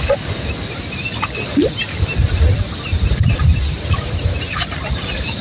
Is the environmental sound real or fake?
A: real